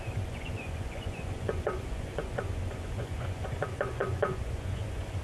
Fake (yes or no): yes